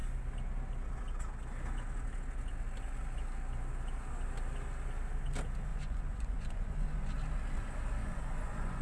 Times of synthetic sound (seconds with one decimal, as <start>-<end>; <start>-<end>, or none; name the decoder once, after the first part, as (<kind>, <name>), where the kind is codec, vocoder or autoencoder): 5.7-7.1 (vocoder, Vocos); 8.0-8.8